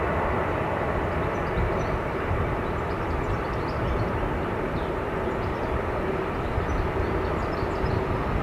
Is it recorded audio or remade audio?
recorded